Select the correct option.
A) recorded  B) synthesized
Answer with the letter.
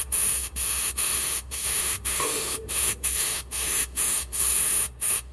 B